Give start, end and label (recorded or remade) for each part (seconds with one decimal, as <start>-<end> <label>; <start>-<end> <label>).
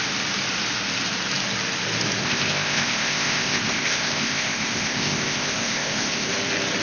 0.0-2.2 recorded; 2.2-6.3 remade; 6.3-6.8 recorded